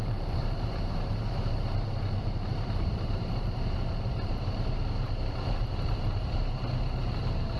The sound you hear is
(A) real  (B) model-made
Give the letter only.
B